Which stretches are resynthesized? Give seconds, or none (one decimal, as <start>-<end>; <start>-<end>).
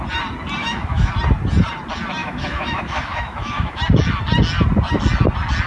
0.6-1.1; 2.2-3.8